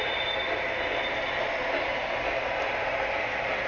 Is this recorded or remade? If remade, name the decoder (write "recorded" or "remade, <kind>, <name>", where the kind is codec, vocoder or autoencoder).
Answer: recorded